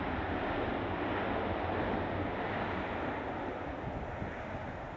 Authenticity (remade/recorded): recorded